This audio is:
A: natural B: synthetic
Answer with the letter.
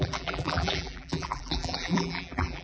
B